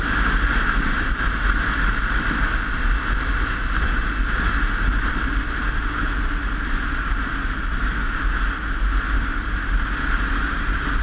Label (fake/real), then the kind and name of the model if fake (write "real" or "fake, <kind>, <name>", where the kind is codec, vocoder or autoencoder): real